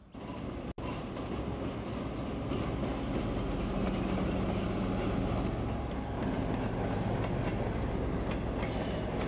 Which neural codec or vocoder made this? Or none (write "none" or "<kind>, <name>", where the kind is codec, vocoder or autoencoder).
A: none